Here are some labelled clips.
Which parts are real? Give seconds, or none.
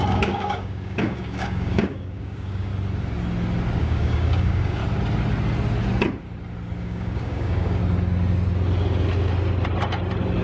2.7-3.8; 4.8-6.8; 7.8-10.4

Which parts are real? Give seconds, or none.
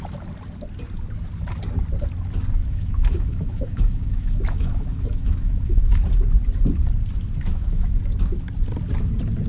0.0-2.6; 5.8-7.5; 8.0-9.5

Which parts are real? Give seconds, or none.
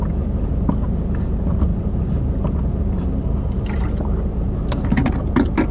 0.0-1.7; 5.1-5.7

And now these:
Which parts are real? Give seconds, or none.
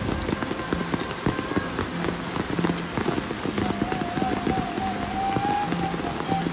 0.0-6.5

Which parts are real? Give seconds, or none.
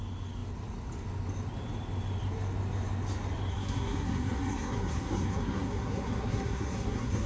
0.0-3.5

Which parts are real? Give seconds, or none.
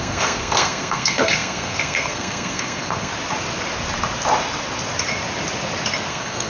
3.1-6.1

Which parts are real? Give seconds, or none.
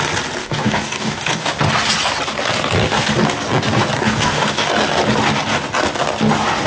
0.0-0.4; 1.5-4.0; 4.7-6.7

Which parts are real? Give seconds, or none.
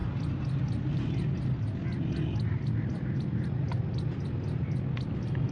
0.0-5.5